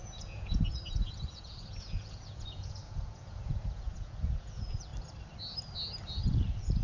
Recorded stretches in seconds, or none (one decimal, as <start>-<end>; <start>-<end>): 4.9-6.2